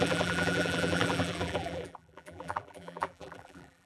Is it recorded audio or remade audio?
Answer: remade